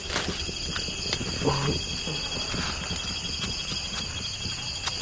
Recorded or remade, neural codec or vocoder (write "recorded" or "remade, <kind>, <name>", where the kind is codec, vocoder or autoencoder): recorded